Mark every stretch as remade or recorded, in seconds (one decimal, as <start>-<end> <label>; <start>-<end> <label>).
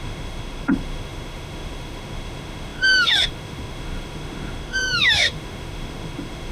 0.0-6.5 remade